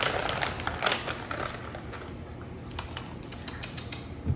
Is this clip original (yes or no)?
yes